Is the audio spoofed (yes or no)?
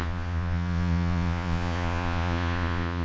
yes